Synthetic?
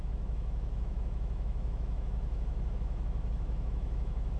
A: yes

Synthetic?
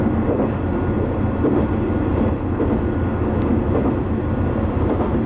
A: no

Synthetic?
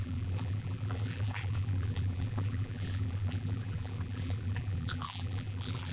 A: yes